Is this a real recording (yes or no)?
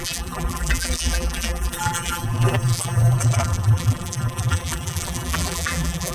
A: no